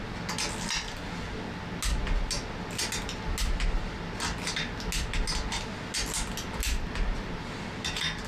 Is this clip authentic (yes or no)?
yes